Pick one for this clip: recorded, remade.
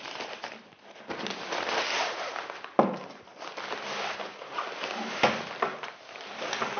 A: recorded